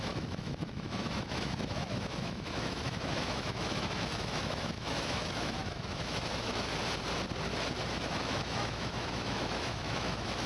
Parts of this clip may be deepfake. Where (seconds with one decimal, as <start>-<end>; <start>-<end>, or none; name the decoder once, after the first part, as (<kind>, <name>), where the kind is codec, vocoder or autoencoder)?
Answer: 0.0-6.7 (autoencoder, DAC-VAE); 7.9-10.5

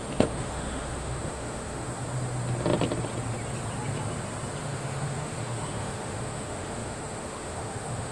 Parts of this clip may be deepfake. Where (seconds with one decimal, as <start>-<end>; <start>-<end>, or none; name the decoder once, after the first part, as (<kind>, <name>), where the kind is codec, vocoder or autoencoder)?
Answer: 0.0-1.9 (autoencoder, DAC-VAE); 4.6-8.1

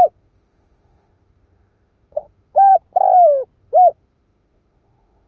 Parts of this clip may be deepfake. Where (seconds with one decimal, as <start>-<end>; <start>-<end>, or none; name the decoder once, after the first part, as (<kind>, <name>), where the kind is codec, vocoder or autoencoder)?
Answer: 0.0-2.7 (autoencoder, DAC-VAE); 3.6-5.3

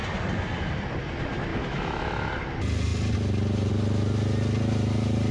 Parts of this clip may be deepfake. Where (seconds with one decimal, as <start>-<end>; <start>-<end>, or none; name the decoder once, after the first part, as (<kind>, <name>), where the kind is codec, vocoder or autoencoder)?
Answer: 1.5-2.3 (autoencoder, DAC-VAE)